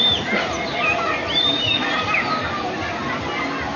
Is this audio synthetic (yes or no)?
no